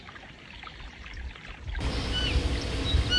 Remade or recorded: recorded